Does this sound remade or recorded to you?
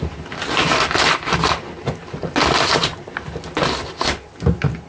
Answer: recorded